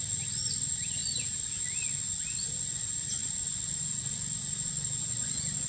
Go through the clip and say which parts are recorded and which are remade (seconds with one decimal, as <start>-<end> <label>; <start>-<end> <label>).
0.0-5.7 recorded